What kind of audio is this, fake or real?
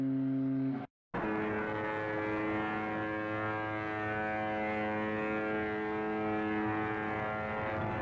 real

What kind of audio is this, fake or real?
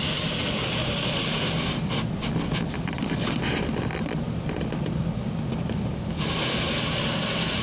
real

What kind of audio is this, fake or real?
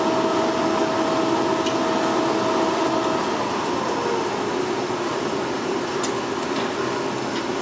real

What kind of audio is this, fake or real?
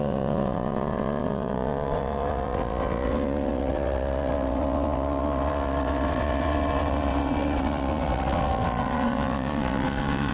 fake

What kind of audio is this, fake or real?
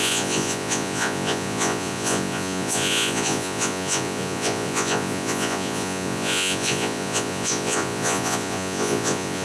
fake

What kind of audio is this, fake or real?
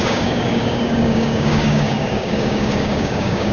fake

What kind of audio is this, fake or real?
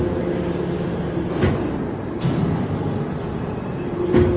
real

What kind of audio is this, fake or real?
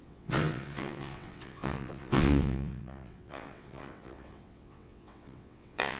fake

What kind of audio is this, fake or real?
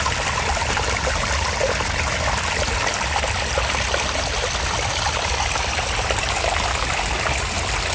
real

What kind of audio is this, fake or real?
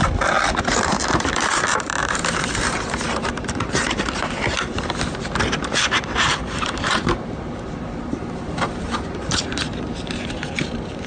fake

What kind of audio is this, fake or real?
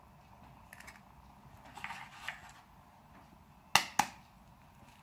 real